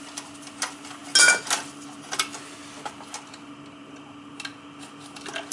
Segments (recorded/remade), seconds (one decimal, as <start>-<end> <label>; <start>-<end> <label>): 0.0-5.5 recorded